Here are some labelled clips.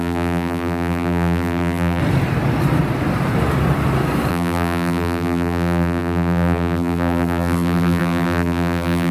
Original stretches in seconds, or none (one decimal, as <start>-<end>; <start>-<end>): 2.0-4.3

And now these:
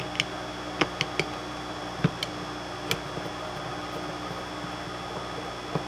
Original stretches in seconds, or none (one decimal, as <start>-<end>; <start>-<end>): 0.0-1.8; 2.3-5.9

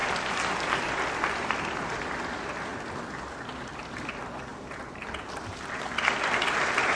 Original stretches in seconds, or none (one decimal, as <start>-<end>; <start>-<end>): 2.7-4.0; 4.5-6.4